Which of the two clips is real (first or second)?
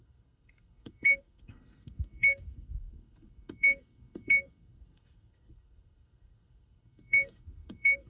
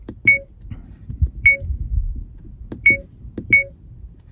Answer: second